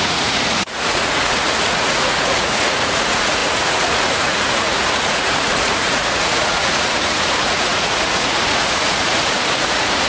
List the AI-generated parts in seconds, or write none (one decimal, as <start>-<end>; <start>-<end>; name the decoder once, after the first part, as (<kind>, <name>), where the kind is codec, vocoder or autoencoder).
0.0-10.1 (vocoder, Vocos)